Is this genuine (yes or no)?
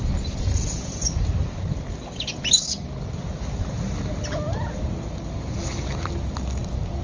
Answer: yes